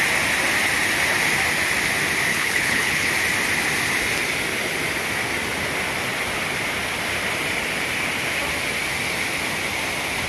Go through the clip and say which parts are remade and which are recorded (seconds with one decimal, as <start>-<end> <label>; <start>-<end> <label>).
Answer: 0.0-2.3 recorded; 2.3-3.1 remade; 3.1-10.3 recorded